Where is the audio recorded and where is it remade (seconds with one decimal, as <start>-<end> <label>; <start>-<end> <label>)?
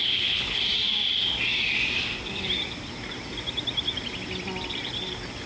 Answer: 0.0-0.6 remade; 0.6-5.5 recorded